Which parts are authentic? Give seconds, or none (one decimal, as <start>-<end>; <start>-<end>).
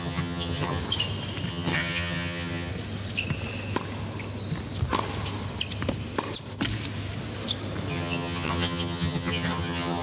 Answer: 0.8-1.5; 2.7-7.9